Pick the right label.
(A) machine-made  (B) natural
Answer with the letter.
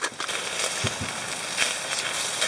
B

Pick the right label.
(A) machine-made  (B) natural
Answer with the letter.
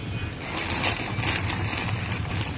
B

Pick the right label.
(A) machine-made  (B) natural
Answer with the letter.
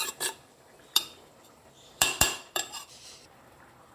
A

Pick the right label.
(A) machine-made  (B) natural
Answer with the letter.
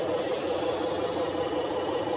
B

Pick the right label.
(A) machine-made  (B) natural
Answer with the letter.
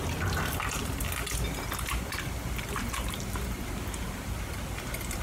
B